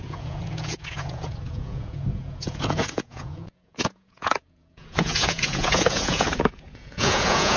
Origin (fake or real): fake